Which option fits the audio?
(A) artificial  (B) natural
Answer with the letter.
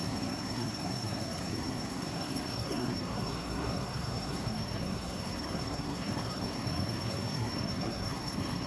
A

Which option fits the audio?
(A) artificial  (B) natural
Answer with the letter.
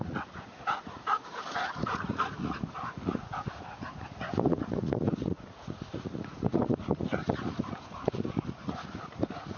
A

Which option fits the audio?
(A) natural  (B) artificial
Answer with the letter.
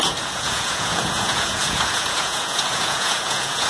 B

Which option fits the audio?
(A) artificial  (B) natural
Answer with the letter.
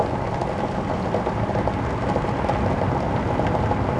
B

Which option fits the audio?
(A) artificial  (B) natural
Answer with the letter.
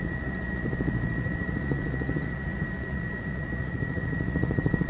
A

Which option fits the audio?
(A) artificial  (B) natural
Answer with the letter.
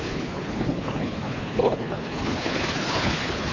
A